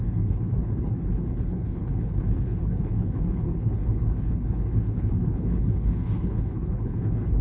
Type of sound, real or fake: fake